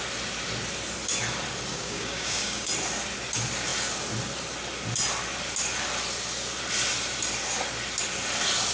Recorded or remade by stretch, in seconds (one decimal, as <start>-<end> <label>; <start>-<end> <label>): 0.0-1.7 recorded; 1.7-2.7 remade; 2.7-8.7 recorded